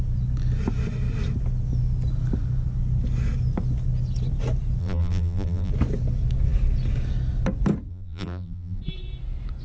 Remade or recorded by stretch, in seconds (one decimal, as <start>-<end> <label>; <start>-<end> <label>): 0.0-4.8 recorded; 4.8-5.7 remade; 5.7-7.9 recorded; 7.9-8.8 remade; 8.8-9.6 recorded